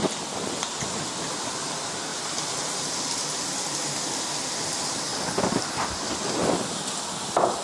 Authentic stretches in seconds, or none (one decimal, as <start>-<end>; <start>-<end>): 0.0-7.6